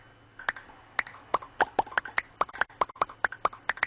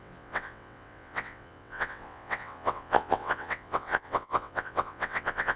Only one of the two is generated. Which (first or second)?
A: second